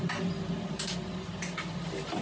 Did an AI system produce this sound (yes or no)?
no